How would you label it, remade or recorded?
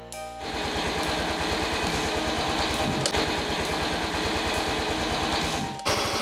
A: recorded